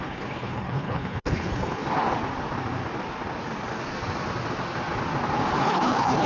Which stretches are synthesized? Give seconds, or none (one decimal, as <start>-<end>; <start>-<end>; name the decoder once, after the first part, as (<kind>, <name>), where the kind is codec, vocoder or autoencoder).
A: 0.0-1.8 (codec, HILCodec); 5.6-6.3